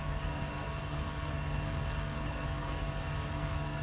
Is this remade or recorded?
remade